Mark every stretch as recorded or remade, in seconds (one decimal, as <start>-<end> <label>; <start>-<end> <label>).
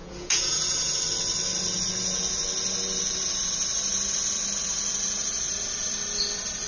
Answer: 0.0-1.0 remade; 1.0-6.7 recorded